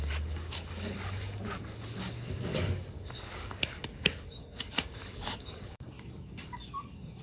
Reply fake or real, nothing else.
fake